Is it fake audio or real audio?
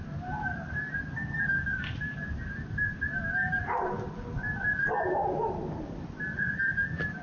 real